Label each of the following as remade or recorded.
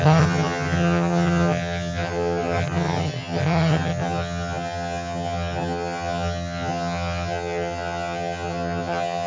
remade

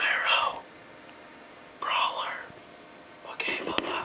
recorded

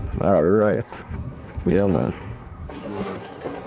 remade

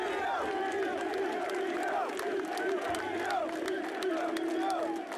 recorded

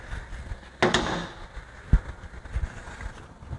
recorded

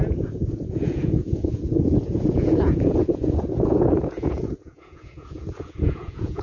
remade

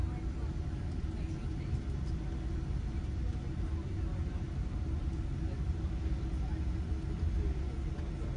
recorded